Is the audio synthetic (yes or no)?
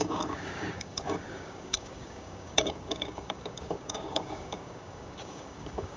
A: yes